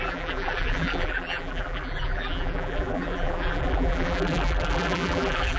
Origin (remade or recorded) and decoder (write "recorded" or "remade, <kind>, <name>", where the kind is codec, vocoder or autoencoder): remade, vocoder, BigVGAN v2